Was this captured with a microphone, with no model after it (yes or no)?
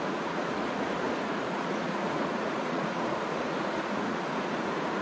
no